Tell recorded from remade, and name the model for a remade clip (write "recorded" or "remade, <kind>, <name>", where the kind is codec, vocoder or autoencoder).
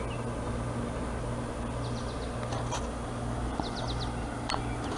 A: recorded